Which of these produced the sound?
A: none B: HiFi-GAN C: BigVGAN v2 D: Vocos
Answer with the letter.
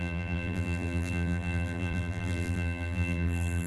C